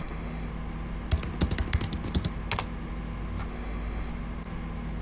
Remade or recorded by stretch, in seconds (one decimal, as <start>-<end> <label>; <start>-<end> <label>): 0.0-0.5 remade; 0.5-3.5 recorded; 3.5-4.1 remade; 4.1-5.0 recorded